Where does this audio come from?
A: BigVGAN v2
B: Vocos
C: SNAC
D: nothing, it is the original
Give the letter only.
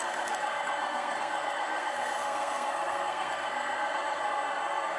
C